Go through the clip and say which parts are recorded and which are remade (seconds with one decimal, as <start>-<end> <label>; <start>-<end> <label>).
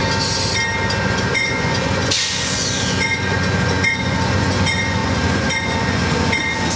0.0-1.0 recorded; 1.0-6.8 remade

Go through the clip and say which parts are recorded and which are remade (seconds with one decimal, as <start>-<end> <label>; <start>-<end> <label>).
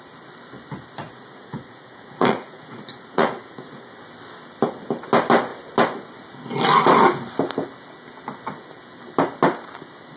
0.0-1.0 recorded; 1.0-3.9 remade; 3.9-10.2 recorded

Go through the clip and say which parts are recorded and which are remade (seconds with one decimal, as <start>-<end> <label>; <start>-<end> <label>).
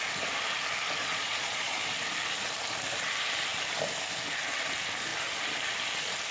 0.0-1.0 recorded; 1.0-2.0 remade; 2.0-6.3 recorded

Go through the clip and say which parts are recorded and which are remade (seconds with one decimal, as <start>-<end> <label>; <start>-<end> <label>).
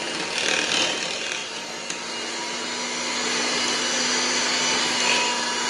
0.0-5.7 recorded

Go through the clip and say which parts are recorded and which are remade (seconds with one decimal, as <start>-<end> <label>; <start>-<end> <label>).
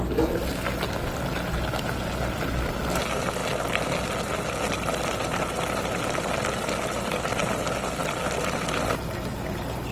0.0-9.9 recorded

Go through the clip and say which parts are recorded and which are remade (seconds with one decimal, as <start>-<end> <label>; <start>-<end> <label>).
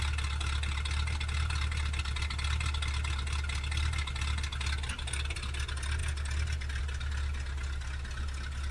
0.0-8.7 recorded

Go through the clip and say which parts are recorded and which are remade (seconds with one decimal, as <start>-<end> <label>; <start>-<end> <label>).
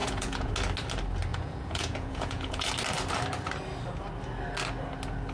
0.0-0.5 remade; 0.5-1.3 recorded; 1.3-2.7 remade; 2.7-5.3 recorded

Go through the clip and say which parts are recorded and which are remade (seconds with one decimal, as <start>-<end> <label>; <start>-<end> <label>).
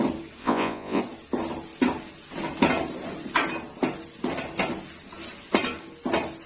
0.0-0.4 recorded; 0.4-1.0 remade; 1.0-6.5 recorded